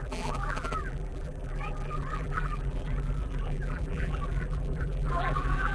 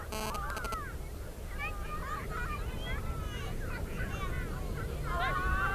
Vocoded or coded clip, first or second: first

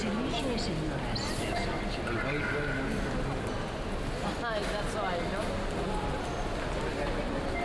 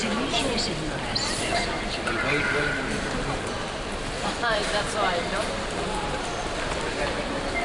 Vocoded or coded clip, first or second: second